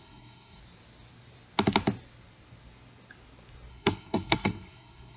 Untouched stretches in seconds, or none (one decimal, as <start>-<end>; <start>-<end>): 0.6-3.7